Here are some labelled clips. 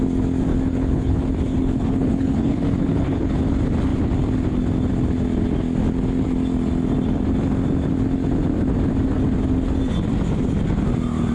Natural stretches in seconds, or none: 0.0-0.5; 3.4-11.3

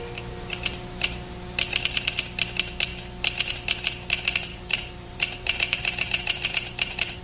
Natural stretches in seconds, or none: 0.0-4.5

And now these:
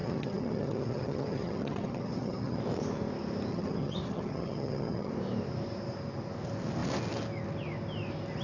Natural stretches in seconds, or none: 2.6-3.5; 5.1-8.4